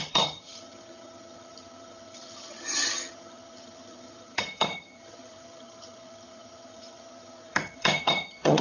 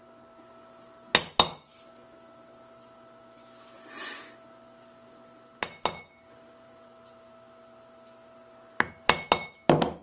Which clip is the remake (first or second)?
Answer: first